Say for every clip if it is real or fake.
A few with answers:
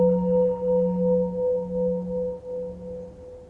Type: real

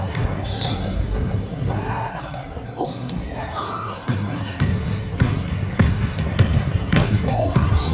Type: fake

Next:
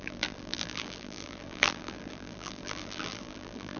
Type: fake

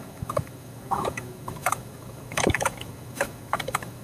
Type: fake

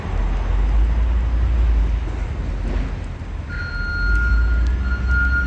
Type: real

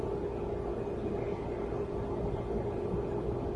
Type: real